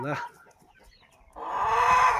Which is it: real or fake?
real